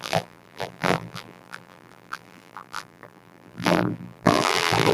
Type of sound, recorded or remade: remade